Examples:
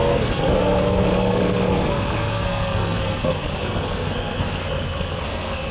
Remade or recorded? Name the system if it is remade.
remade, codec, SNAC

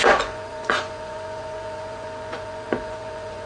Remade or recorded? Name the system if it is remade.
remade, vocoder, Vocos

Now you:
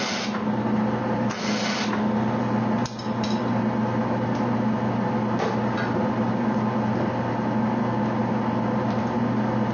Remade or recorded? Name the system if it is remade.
recorded